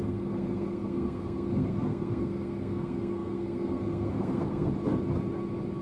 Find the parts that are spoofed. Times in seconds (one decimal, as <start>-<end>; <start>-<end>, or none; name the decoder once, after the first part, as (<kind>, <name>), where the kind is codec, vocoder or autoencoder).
0.0-4.7 (codec, SNAC)